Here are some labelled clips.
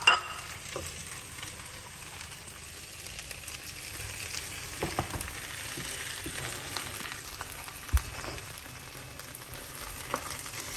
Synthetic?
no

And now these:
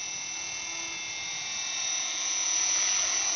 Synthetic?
no